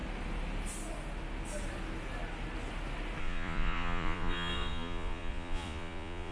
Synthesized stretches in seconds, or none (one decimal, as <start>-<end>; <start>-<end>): 3.2-6.3